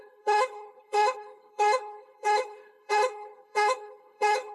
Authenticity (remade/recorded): remade